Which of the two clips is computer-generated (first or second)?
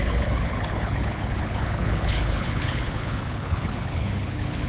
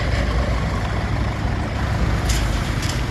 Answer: first